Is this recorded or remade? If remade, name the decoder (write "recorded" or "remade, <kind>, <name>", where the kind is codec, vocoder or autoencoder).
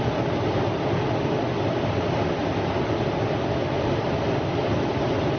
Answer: recorded